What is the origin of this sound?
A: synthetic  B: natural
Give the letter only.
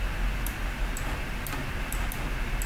B